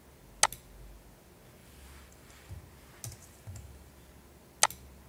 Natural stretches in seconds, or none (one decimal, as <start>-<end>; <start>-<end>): 0.0-1.6; 2.6-3.2; 3.9-5.1